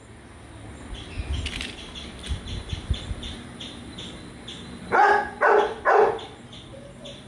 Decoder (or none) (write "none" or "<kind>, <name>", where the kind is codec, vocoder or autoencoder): none